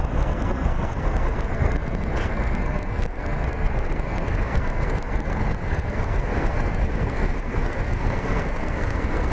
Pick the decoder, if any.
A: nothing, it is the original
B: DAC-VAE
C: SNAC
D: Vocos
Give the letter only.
C